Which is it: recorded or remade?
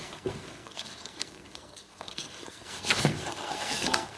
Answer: remade